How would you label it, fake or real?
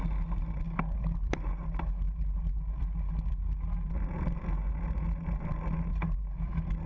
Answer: real